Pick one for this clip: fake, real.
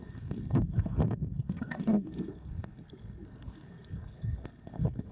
fake